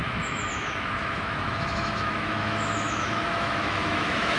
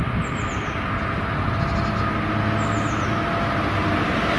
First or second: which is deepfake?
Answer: first